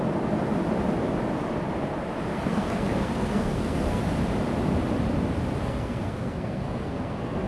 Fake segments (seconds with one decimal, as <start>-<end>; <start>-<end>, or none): 2.3-4.0; 5.6-7.5